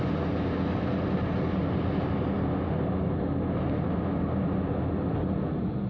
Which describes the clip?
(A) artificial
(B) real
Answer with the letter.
B